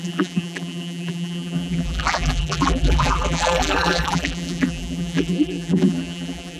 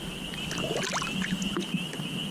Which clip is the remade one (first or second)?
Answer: first